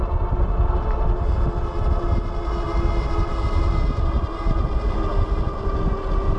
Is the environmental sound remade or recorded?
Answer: recorded